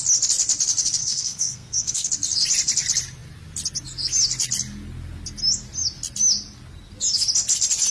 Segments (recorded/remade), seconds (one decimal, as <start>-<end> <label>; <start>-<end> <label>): 0.0-1.0 recorded; 1.0-2.1 remade; 2.1-7.9 recorded